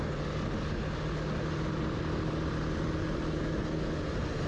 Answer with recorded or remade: recorded